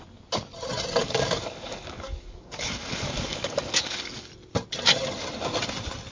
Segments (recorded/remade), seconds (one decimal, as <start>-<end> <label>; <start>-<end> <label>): 0.0-1.0 recorded; 1.0-4.3 remade; 4.3-6.1 recorded